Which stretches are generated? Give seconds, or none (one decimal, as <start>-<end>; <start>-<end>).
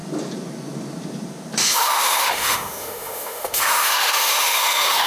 1.6-5.1